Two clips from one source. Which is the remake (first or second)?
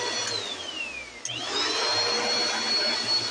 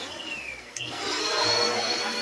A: second